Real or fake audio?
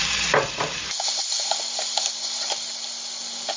real